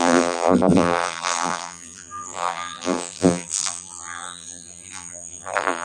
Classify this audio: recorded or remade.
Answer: remade